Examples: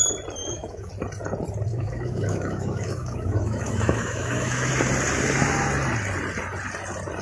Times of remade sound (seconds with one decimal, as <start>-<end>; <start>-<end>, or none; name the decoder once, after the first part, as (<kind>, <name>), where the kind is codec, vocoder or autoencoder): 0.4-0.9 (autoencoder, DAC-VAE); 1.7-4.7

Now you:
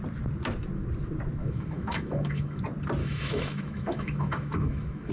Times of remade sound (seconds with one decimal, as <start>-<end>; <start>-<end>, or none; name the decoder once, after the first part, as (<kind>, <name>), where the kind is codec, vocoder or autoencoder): 1.4-2.6 (autoencoder, DAC-VAE); 3.0-5.1

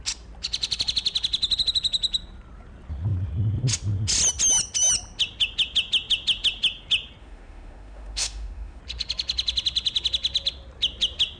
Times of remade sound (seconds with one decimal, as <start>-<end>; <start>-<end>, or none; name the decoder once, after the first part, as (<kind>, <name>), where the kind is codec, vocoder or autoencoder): 7.2-8.8 (autoencoder, DAC-VAE)

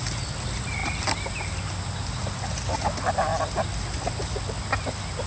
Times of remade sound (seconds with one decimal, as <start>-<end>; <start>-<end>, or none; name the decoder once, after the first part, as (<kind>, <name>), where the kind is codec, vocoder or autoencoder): none

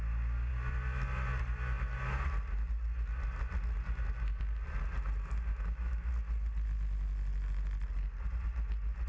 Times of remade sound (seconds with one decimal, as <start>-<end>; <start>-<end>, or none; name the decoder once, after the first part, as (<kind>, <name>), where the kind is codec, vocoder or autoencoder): 5.5-6.1 (autoencoder, DAC-VAE)